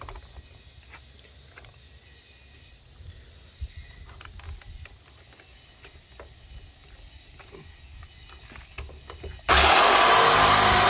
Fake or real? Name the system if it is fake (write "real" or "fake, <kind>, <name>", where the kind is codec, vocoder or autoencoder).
real